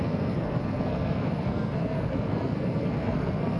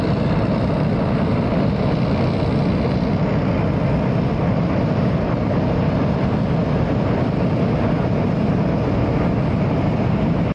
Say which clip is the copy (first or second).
first